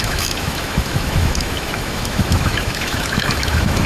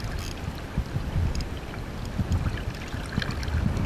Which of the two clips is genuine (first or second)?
second